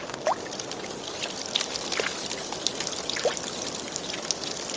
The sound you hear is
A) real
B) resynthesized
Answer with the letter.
A